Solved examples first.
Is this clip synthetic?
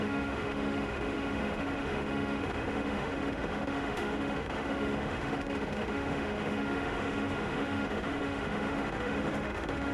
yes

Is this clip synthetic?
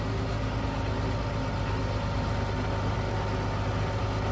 no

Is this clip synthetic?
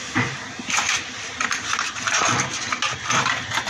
no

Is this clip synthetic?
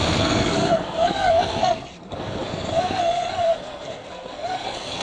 yes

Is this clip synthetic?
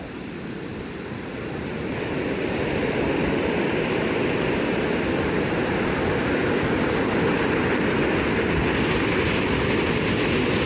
no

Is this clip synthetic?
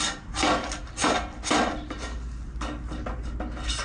no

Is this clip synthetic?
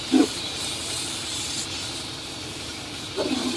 yes